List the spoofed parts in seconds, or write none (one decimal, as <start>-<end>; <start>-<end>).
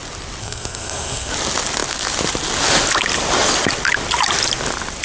0.4-1.3